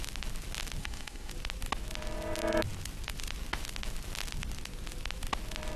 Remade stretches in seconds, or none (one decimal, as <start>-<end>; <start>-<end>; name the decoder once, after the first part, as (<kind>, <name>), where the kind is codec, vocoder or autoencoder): 0.8-1.3 (autoencoder, DAC-VAE)